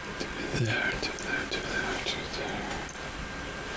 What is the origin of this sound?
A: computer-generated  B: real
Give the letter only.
B